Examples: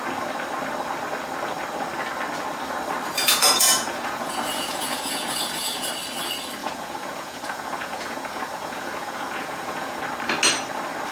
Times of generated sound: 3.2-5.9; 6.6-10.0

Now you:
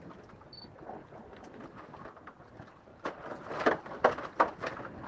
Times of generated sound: 1.0-2.0; 2.9-3.7

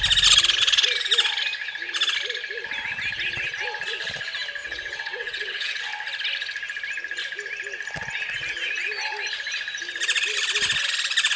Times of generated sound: 4.6-5.8

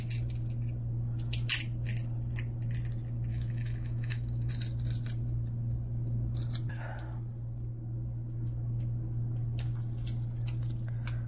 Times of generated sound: 3.3-4.5